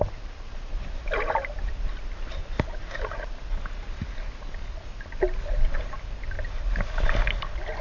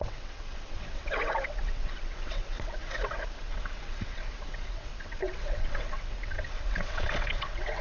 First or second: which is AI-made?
second